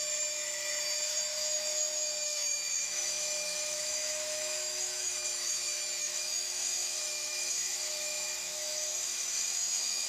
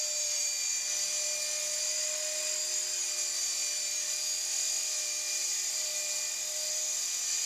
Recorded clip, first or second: second